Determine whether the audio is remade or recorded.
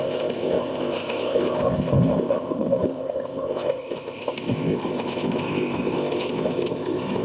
remade